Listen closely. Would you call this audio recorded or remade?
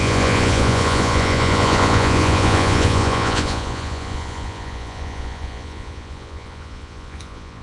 remade